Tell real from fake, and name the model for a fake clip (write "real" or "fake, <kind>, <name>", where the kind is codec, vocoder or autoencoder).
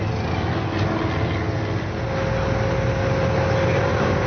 real